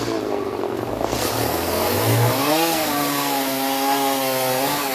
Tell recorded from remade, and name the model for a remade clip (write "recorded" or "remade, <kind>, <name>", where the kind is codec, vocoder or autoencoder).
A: remade, codec, SNAC